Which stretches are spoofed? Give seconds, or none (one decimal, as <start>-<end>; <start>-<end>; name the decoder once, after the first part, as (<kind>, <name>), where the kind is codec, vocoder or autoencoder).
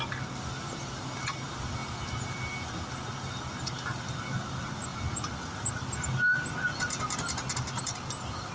none